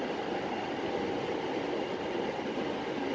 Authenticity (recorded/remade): recorded